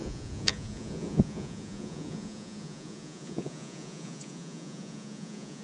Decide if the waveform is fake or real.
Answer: fake